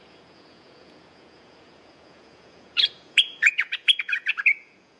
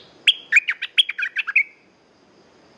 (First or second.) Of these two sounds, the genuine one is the second